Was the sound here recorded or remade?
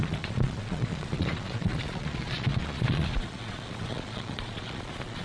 remade